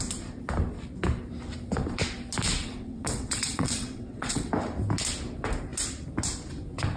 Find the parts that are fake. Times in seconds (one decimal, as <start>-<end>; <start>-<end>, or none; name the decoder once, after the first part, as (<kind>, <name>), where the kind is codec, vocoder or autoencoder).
2.6-4.5 (vocoder, WaveNeXt)